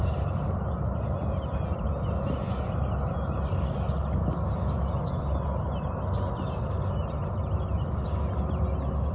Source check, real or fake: real